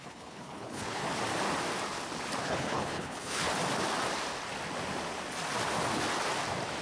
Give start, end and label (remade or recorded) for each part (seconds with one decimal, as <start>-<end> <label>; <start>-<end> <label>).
0.0-1.0 remade; 1.0-2.4 recorded; 2.4-3.4 remade; 3.4-6.8 recorded